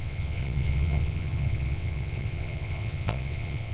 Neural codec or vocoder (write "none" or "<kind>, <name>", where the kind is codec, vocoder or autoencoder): vocoder, WaveNeXt